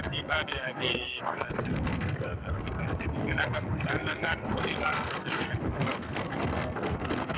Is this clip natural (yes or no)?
no